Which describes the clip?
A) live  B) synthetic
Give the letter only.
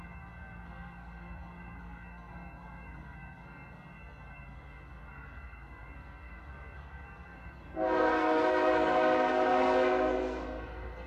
B